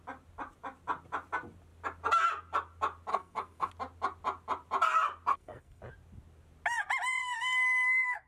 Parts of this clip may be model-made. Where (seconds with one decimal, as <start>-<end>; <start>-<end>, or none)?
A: 3.1-3.7; 5.3-5.8; 7.2-8.3